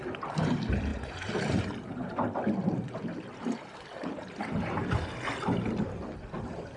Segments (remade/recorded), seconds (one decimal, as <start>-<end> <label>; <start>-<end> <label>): 0.0-0.9 recorded; 0.9-1.6 remade; 1.6-2.8 recorded; 2.8-4.5 remade; 4.5-6.8 recorded